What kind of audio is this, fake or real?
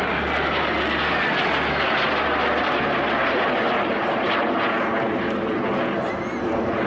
real